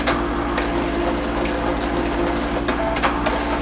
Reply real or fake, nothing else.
real